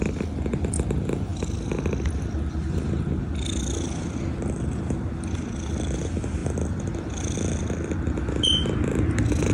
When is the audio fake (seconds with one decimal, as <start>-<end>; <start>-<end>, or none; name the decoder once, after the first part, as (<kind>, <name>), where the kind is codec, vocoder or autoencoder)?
none